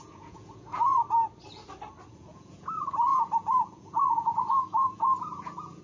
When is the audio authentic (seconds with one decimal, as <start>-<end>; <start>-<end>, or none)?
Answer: 1.0-2.1